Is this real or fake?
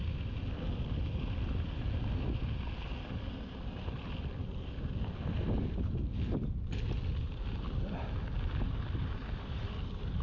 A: real